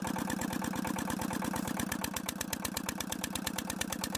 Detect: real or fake real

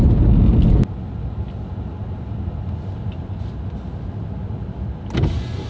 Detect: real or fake real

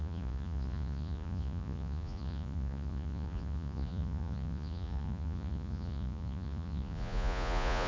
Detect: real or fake fake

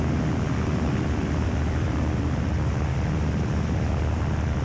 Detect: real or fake real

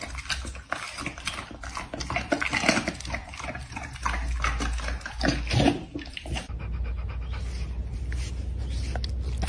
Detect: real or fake real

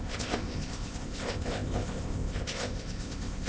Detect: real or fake fake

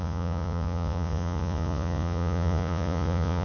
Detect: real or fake fake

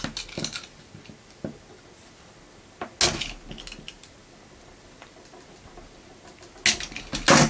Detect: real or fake real